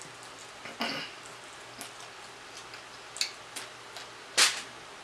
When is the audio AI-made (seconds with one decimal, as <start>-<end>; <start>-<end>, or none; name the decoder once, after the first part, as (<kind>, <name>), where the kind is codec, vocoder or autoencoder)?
none